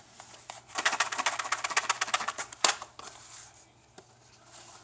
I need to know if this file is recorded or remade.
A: recorded